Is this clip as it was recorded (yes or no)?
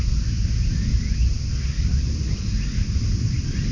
yes